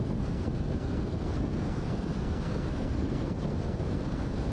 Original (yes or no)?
no